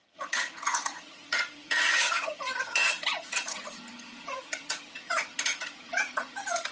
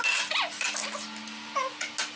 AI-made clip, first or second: first